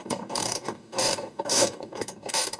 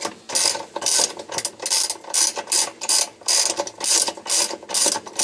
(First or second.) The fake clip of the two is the first